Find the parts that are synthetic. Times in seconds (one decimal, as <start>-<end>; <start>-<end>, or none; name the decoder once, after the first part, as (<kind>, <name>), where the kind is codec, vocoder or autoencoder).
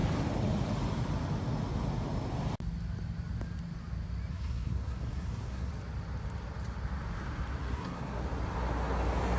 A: 4.3-5.7 (codec, SNAC); 7.6-8.2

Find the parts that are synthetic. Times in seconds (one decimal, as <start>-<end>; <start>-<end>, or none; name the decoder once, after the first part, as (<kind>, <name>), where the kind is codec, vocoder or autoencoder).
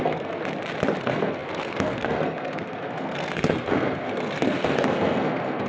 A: 0.0-0.4 (codec, SNAC); 1.0-5.7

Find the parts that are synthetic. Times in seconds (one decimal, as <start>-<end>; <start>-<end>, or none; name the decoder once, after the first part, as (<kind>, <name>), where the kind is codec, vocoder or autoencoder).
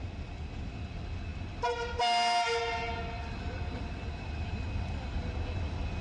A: none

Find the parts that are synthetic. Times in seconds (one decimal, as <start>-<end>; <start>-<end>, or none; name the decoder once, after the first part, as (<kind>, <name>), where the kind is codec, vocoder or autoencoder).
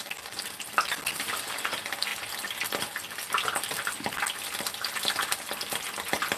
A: none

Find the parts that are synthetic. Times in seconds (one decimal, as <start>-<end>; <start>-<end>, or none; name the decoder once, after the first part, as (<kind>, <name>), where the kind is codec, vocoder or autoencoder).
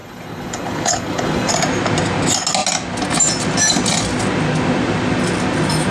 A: 0.0-1.5 (codec, HILCodec)